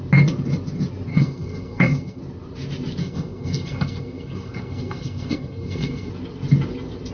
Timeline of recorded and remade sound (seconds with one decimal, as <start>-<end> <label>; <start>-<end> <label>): 0.0-1.1 recorded; 1.1-2.2 remade; 2.2-3.0 recorded; 3.0-6.1 remade; 6.1-7.1 recorded